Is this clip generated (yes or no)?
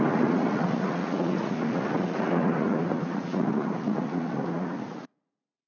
yes